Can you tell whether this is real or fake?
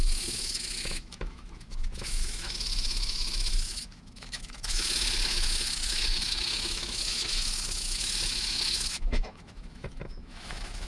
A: fake